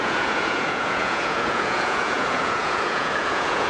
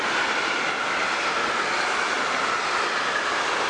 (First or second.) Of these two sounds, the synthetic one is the first